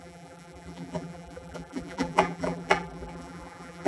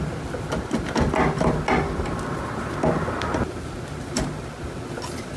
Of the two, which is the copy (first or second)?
first